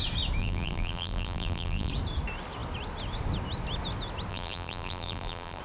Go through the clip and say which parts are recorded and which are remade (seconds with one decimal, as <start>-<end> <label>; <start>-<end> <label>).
0.0-0.4 recorded; 0.4-1.9 remade; 1.9-4.3 recorded; 4.3-5.6 remade